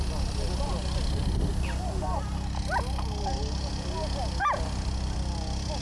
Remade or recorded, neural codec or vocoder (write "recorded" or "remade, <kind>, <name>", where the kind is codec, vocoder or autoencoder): recorded